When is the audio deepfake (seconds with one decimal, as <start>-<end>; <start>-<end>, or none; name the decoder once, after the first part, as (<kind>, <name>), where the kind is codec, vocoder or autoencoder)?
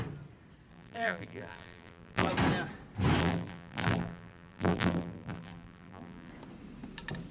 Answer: 0.7-2.3 (vocoder, BigVGAN v2); 3.2-6.3